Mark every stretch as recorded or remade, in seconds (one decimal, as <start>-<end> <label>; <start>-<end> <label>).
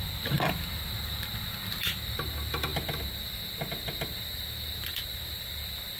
0.0-6.0 recorded